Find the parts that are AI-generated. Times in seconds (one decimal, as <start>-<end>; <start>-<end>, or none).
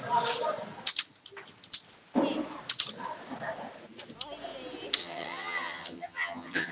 5.0-6.7